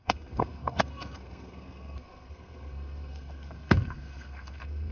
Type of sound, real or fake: fake